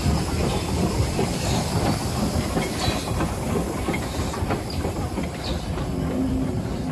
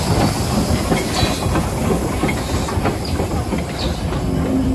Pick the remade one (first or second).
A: first